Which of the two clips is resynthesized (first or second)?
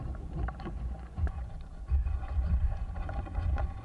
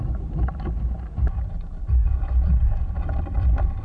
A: first